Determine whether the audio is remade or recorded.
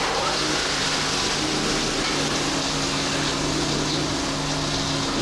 recorded